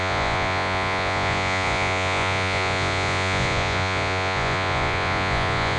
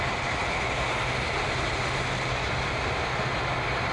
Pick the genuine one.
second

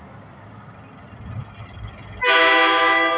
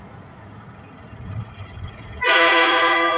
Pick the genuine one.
first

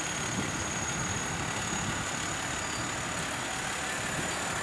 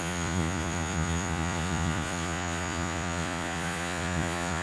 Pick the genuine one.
first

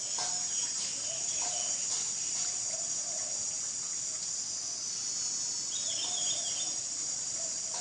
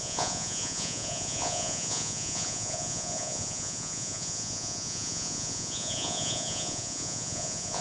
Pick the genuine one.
first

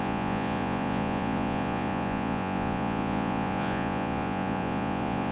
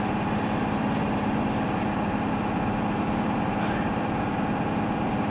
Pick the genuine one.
second